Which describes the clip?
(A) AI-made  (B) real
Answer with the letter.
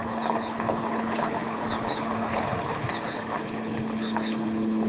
A